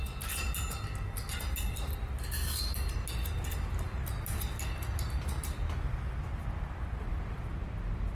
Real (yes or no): yes